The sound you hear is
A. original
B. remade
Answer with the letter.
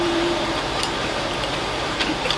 B